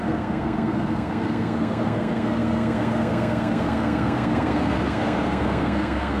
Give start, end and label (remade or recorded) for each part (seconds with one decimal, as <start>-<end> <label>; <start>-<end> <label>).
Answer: 0.0-6.2 remade